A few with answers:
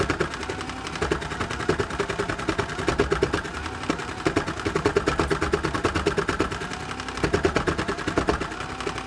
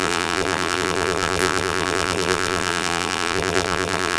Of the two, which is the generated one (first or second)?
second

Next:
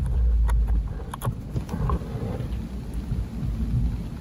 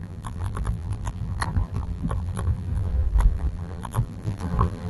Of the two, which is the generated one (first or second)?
second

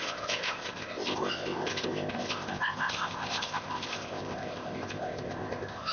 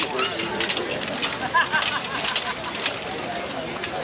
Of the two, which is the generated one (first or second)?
first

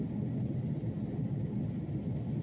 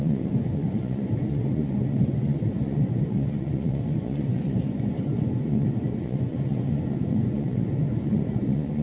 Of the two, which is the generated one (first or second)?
second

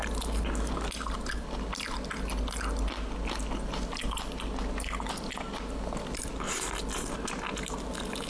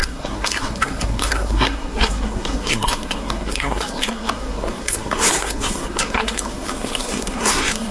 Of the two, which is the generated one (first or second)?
second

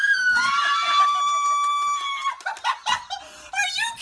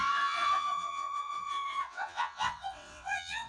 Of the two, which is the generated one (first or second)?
second